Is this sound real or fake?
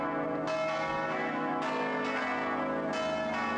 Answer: real